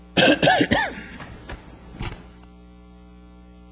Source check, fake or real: real